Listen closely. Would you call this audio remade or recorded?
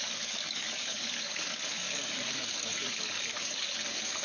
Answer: remade